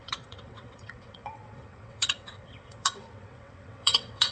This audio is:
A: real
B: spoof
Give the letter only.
B